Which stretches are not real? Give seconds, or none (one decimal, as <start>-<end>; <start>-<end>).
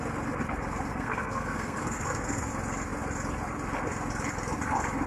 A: 0.9-2.5